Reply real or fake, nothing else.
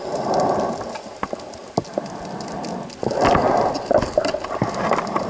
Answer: real